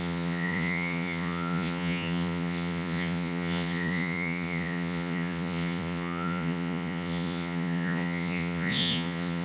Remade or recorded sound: remade